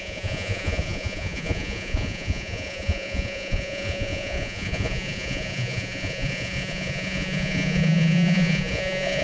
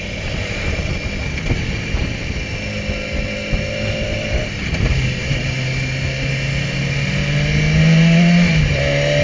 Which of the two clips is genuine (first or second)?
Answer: second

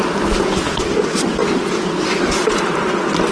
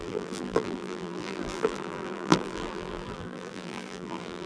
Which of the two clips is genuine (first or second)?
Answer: first